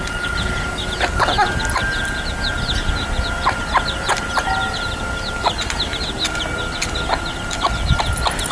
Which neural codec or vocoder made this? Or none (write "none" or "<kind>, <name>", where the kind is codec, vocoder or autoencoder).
none